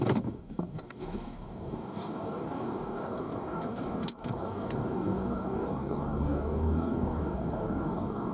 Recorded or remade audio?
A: remade